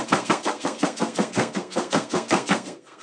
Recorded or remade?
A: remade